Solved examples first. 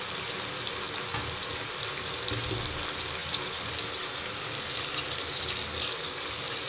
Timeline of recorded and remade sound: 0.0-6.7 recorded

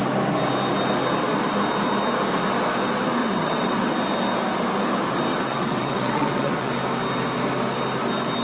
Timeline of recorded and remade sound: 0.0-3.2 recorded; 3.2-3.9 remade; 3.9-5.3 recorded; 5.3-6.7 remade; 6.7-8.4 recorded